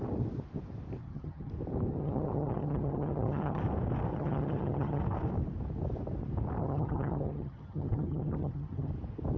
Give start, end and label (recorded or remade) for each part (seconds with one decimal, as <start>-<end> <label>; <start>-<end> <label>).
0.0-1.0 recorded; 1.0-1.5 remade; 1.5-1.9 recorded; 1.9-3.6 remade; 3.6-4.1 recorded; 4.1-5.0 remade; 5.0-6.6 recorded; 6.6-8.9 remade; 8.9-9.4 recorded